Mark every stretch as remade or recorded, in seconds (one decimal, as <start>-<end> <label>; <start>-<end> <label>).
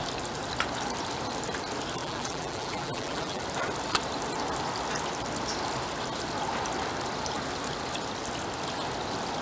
0.0-2.0 recorded; 2.0-3.4 remade; 3.4-9.4 recorded